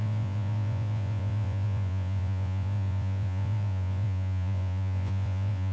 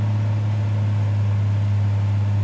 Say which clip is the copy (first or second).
first